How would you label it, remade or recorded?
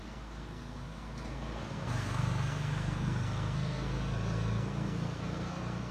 remade